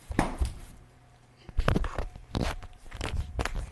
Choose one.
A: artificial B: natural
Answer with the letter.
A